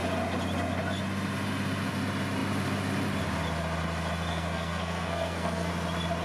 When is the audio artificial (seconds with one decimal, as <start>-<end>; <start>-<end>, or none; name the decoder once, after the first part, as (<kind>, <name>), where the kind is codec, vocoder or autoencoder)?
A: 4.3-5.7 (codec, SNAC)